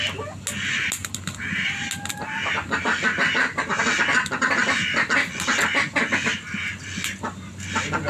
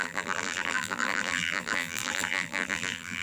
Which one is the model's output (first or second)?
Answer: second